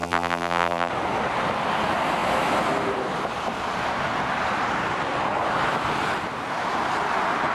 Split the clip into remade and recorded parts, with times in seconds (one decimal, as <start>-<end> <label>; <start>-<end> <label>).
0.0-0.9 remade; 0.9-7.5 recorded